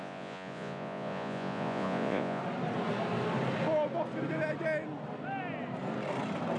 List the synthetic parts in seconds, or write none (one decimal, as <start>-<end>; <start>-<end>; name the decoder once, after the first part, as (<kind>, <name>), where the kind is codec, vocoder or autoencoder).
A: 0.0-2.4 (vocoder, Vocos)